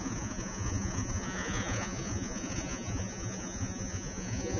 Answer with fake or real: fake